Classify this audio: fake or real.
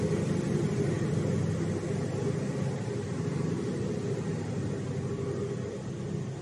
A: real